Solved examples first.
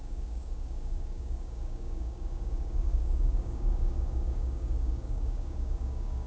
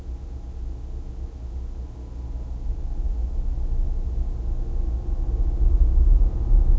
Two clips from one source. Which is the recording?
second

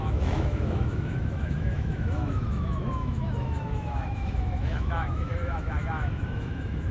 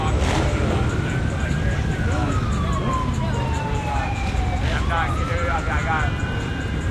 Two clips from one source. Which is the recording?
second